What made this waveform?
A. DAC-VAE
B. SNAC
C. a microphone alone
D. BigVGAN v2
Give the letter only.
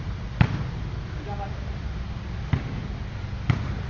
C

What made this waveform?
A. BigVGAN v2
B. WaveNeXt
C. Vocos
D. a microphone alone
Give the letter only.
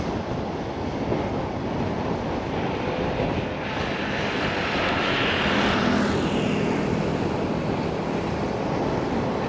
D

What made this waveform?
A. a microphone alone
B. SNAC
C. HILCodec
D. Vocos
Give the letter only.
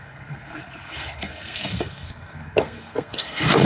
B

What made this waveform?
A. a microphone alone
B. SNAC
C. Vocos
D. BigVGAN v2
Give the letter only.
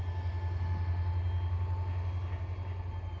A